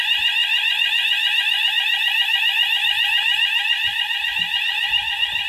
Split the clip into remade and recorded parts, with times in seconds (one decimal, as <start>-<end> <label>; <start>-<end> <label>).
0.0-5.5 recorded